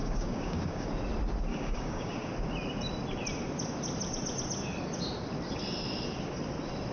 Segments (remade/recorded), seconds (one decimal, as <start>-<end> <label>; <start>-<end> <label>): 0.0-0.9 remade; 0.9-1.5 recorded; 1.5-2.3 remade; 2.3-6.9 recorded